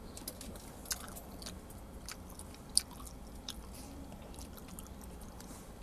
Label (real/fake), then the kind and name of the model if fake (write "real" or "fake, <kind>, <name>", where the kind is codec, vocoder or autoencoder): real